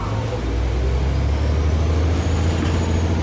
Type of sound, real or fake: real